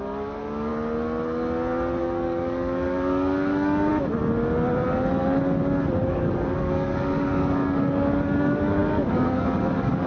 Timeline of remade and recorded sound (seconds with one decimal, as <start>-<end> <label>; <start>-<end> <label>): 0.0-0.7 remade; 0.7-2.0 recorded; 2.0-3.9 remade; 3.9-6.1 recorded; 6.1-10.1 remade